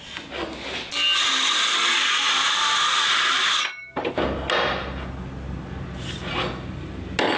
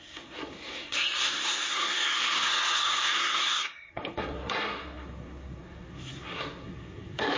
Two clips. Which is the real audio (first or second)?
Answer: first